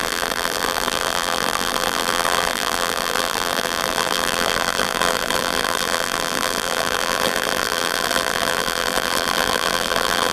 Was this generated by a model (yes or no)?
yes